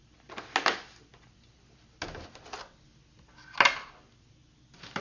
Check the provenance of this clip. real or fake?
real